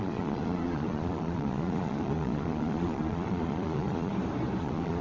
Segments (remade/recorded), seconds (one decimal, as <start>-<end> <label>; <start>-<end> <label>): 0.0-4.1 remade; 4.1-4.6 recorded; 4.6-5.0 remade